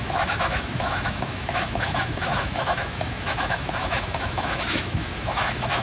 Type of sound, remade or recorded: remade